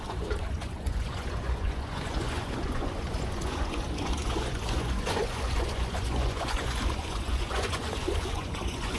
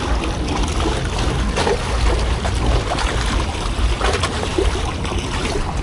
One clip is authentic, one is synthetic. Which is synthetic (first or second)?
first